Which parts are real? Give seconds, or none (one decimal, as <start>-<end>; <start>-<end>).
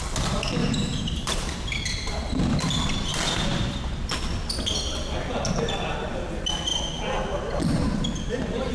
0.0-0.6; 2.1-8.7